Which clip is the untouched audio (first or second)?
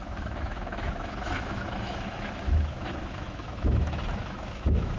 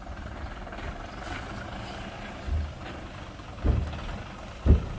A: second